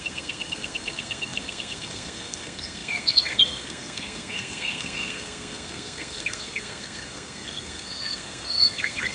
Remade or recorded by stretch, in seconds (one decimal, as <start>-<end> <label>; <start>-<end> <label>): 0.0-9.1 remade